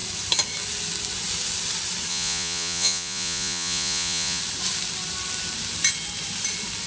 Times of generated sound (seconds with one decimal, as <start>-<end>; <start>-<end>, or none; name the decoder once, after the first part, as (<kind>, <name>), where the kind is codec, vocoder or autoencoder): 2.1-4.4 (vocoder, Vocos)